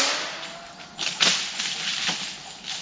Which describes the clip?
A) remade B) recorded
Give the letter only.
B